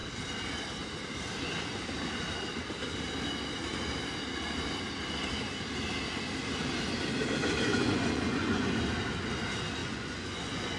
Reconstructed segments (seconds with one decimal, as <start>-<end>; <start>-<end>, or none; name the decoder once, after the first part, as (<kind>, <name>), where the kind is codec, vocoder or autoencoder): 7.7-8.7 (vocoder, Vocos); 9.8-10.8